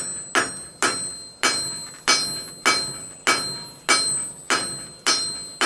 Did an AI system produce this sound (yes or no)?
no